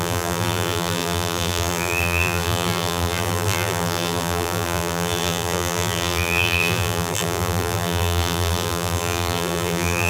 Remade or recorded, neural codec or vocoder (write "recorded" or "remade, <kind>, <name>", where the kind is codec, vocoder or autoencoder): remade, vocoder, BigVGAN v2